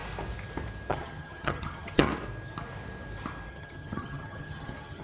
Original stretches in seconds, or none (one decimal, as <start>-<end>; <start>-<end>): 0.0-0.9; 2.1-3.5